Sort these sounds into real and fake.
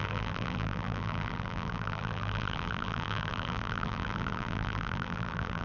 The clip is fake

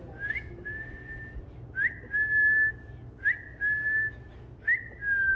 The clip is real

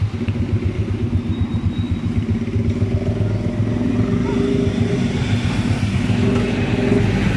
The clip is real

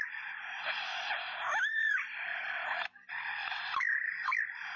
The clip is real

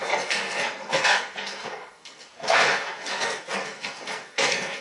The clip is fake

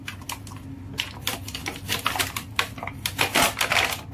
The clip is real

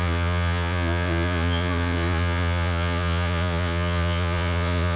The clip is fake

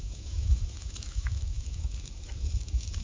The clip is fake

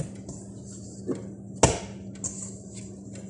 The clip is real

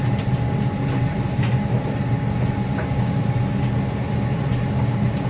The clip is real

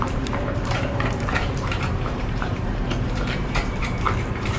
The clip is fake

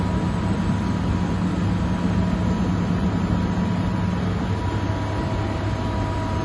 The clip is real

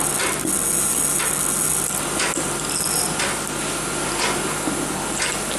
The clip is real